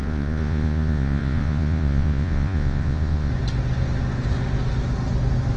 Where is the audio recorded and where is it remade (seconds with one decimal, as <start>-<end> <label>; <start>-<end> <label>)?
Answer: 0.0-3.3 remade; 3.3-5.6 recorded